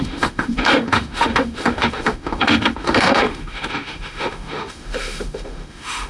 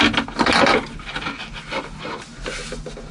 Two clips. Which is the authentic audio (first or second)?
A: second